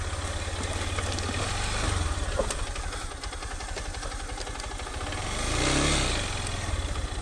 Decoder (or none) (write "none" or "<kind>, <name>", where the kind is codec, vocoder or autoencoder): none